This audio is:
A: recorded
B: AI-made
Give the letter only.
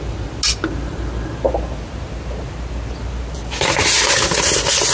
A